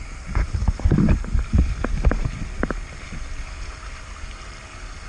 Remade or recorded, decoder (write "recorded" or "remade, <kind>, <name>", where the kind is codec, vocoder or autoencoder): recorded